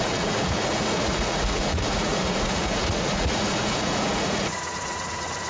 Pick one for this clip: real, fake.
fake